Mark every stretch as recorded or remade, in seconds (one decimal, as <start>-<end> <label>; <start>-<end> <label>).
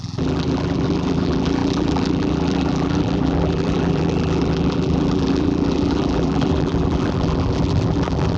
0.0-8.4 remade